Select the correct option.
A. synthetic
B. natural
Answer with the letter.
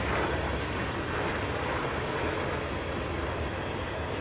B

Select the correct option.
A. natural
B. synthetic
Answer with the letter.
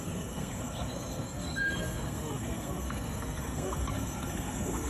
B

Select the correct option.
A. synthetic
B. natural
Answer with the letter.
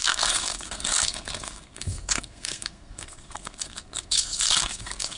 A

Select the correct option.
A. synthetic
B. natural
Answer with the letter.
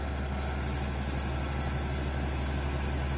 B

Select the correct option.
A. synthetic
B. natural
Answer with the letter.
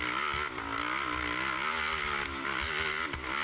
B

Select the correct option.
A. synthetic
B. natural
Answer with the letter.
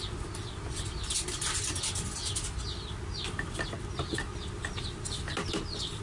B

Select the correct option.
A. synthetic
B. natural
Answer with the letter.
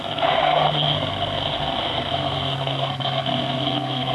A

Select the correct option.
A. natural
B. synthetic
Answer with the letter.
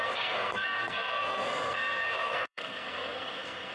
B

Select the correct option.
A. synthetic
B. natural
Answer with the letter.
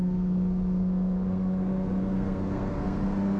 A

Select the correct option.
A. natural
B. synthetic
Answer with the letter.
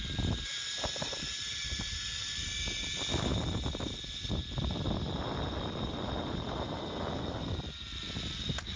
A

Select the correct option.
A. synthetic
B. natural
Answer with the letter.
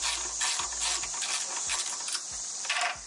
B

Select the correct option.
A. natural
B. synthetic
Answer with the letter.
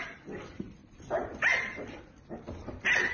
A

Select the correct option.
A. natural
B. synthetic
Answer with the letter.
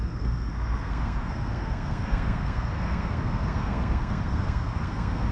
B